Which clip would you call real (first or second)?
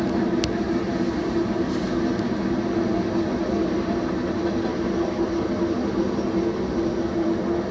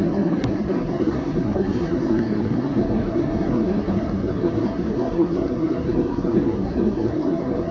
first